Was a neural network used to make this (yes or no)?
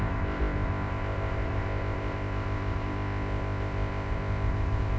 yes